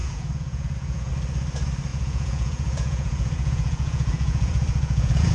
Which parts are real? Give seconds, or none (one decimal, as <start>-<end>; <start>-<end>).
1.1-1.9